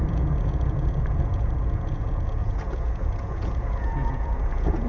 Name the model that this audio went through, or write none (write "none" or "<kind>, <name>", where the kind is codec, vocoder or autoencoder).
vocoder, Vocos